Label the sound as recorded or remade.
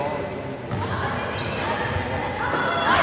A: recorded